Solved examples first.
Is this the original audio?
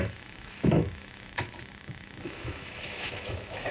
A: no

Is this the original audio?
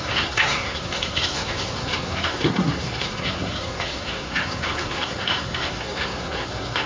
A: no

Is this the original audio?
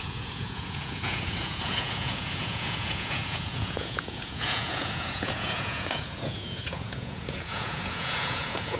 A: no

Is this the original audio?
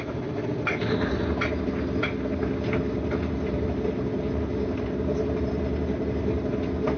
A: yes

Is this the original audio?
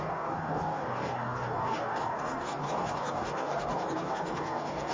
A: no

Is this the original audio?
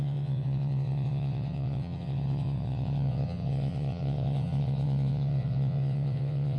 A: no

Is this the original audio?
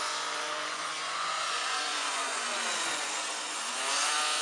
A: no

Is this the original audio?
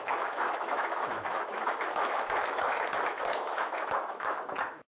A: no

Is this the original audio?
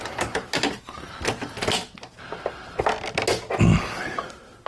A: yes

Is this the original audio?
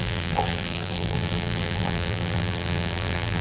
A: no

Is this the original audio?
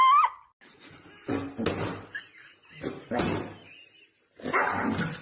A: yes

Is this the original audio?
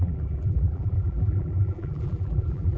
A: no